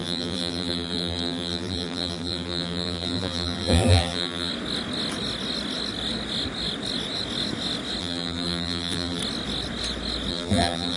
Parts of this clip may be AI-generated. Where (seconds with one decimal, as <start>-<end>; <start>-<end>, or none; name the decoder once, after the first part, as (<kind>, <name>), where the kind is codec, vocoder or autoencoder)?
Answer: 0.0-4.5 (vocoder, BigVGAN v2); 8.0-9.2; 10.3-11.0